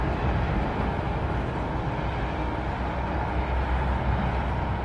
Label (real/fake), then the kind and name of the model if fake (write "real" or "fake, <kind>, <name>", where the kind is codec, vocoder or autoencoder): real